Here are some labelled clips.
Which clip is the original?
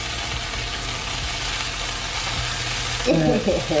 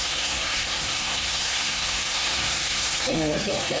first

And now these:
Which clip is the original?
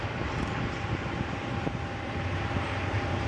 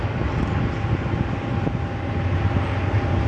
second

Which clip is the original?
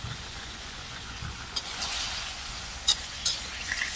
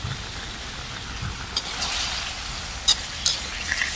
second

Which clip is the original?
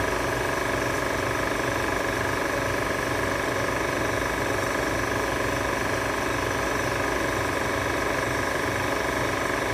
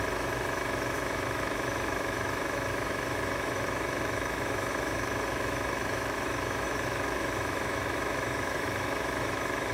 first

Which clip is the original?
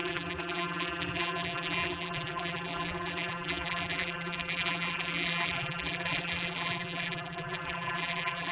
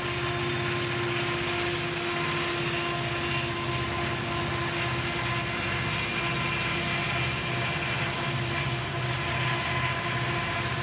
second